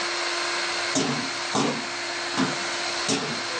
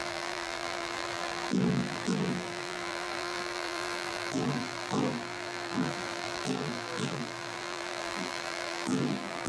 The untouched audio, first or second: first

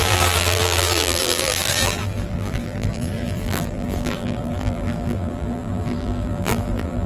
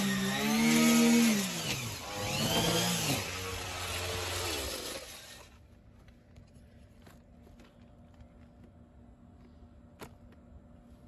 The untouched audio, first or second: second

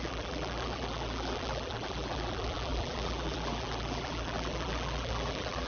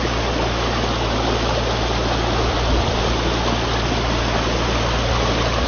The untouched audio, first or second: second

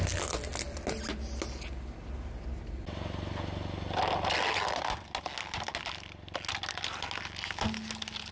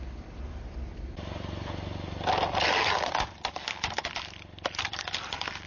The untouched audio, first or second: first